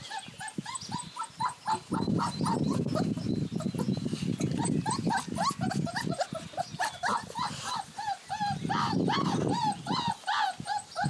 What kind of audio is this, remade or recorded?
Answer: recorded